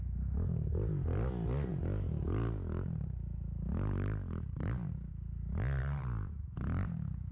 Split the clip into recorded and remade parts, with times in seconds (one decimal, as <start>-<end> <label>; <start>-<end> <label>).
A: 0.0-5.8 recorded; 5.8-7.3 remade